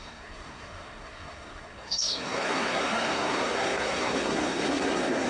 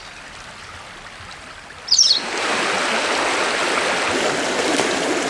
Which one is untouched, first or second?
second